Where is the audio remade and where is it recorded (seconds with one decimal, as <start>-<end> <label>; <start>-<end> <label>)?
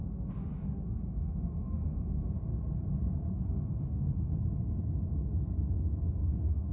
0.0-2.5 remade; 2.5-3.3 recorded; 3.3-4.3 remade; 4.3-6.2 recorded; 6.2-6.7 remade